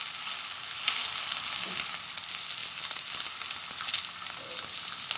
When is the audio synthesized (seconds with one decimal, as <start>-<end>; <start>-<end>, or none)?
none